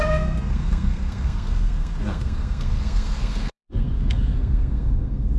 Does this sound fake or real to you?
fake